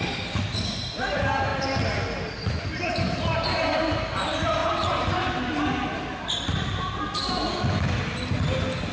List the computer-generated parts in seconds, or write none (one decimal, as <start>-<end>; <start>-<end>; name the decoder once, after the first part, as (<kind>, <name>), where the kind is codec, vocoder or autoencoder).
none